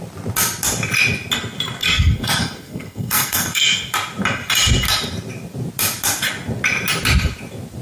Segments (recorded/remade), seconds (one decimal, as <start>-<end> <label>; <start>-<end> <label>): 0.0-1.8 recorded; 1.8-3.9 remade; 3.9-7.8 recorded